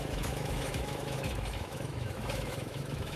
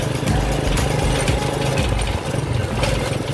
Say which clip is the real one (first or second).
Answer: second